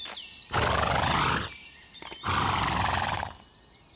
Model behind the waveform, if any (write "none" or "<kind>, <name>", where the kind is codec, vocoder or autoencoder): none